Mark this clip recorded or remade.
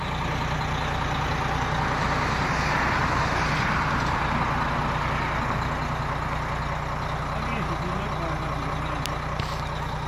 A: recorded